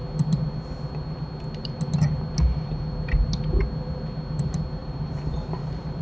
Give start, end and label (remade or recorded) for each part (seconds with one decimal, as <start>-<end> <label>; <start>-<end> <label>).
0.0-4.8 recorded; 4.8-6.0 remade

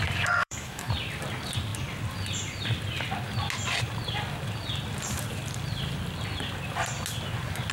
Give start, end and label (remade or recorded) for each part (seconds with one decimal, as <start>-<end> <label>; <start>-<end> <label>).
0.0-0.4 recorded; 0.4-0.9 remade; 0.9-7.7 recorded

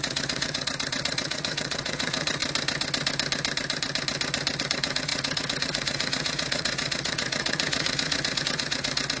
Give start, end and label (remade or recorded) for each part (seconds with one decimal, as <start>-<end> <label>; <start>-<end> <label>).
0.0-2.4 remade; 2.4-4.6 recorded; 4.6-9.2 remade

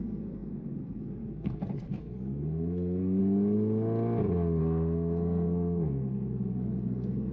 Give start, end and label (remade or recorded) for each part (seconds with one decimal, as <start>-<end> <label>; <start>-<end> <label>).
0.0-3.2 remade; 3.2-4.6 recorded; 4.6-7.3 remade

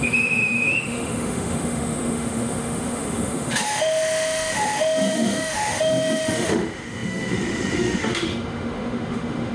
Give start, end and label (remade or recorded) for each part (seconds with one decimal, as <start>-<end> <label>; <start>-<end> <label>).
0.0-9.5 remade

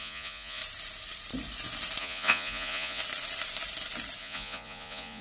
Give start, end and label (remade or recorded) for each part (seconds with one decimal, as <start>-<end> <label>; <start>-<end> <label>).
0.0-0.6 remade; 0.6-2.0 recorded; 2.0-3.0 remade; 3.0-4.2 recorded; 4.2-5.2 remade

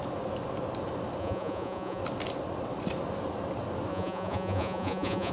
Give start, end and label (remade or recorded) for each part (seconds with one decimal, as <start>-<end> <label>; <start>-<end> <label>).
0.0-1.2 recorded; 1.2-2.0 remade; 2.0-3.9 recorded; 3.9-5.3 remade

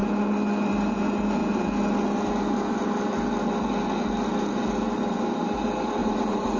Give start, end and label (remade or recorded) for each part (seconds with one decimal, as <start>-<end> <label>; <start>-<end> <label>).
0.0-6.0 recorded; 6.0-6.6 remade